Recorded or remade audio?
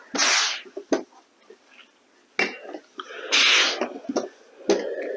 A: recorded